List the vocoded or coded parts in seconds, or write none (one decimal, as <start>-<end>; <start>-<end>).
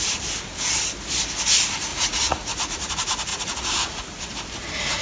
1.9-2.9; 3.3-4.3